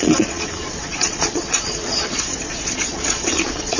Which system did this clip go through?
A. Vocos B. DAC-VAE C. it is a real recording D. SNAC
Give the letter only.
A